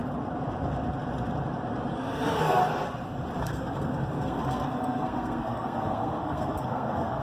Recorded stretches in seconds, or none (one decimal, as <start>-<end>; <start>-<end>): 0.0-1.9; 2.6-3.4